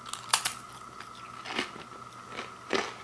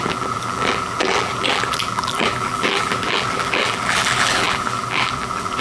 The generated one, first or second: second